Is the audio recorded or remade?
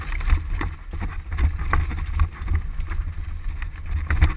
recorded